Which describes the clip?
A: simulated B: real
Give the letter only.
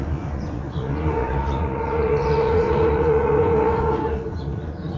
A